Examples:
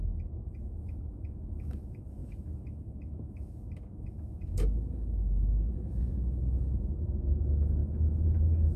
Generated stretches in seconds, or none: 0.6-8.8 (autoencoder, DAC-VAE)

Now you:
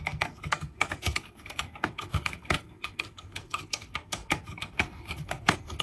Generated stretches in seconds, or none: 0.0-5.8 (codec, SNAC)

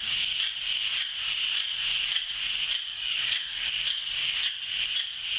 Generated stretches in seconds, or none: 2.9-3.7 (codec, DAC)

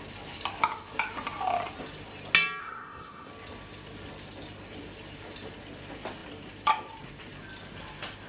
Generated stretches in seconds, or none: 2.6-3.3 (codec, SNAC)

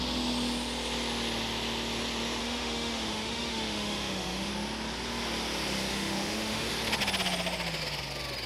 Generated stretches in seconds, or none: 2.4-4.5 (autoencoder, DAC-VAE); 5.9-6.7